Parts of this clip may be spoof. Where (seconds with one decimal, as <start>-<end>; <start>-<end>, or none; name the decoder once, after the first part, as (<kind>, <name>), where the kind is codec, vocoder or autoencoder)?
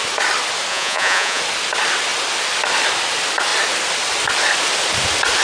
0.7-1.4 (vocoder, Vocos)